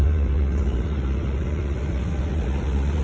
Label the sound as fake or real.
fake